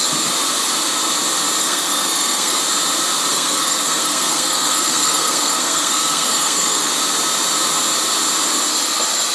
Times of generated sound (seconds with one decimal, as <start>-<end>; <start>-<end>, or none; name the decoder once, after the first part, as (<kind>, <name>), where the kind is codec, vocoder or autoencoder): 1.6-2.6 (codec, SNAC); 3.3-6.9